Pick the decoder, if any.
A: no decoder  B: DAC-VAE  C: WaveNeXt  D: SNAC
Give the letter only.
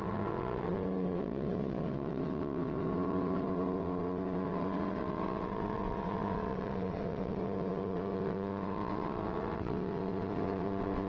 C